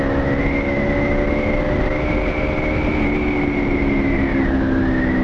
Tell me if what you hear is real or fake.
real